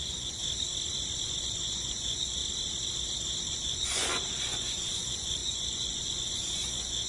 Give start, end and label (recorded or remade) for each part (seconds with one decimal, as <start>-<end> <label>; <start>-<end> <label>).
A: 0.0-0.4 remade; 0.4-1.2 recorded; 1.2-2.4 remade; 2.4-3.4 recorded; 3.4-7.1 remade